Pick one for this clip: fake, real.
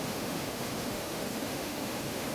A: fake